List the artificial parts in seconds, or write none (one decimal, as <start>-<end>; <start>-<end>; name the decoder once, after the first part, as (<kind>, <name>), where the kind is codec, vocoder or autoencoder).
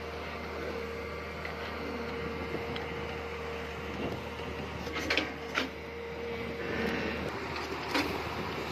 4.8-5.6 (codec, SNAC)